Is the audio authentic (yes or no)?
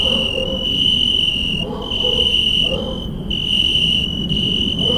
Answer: no